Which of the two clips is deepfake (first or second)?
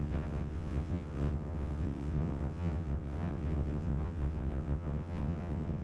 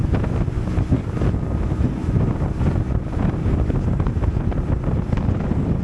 first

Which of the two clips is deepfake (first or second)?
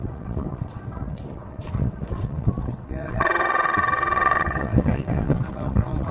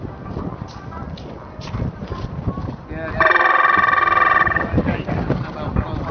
first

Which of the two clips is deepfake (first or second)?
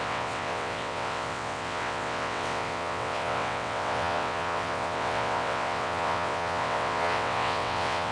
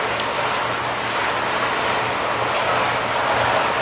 first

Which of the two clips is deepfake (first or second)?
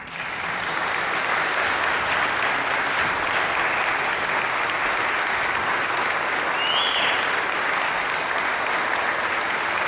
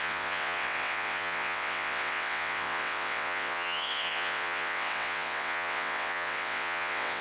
second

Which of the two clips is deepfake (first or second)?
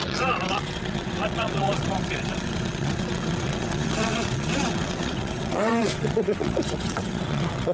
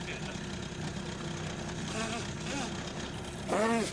first